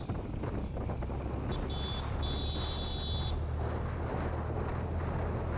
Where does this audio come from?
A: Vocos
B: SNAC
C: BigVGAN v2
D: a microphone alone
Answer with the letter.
D